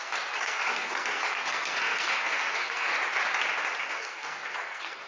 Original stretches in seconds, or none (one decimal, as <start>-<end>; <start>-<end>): 2.9-3.8